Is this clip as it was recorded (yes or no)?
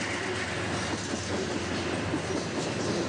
yes